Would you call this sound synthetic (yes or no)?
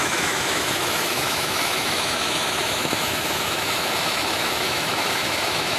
yes